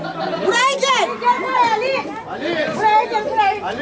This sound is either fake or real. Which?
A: real